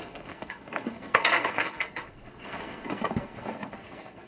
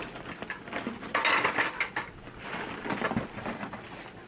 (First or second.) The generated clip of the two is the first